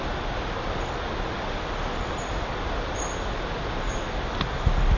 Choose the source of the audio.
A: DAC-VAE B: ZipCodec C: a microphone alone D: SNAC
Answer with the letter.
C